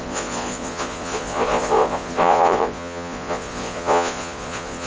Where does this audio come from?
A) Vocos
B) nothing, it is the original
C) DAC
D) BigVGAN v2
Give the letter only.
A